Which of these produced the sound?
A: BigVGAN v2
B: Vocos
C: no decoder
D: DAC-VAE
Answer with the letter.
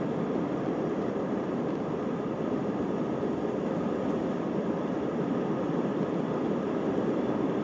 A